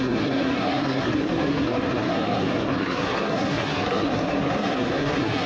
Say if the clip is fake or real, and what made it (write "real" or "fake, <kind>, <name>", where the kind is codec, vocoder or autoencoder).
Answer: fake, codec, SNAC